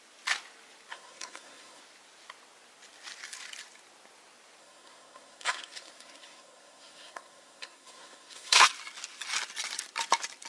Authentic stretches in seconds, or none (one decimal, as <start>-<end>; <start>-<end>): 0.0-0.9; 1.8-4.6; 8.7-10.5